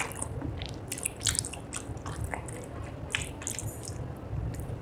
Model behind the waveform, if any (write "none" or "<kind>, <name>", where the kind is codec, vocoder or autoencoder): none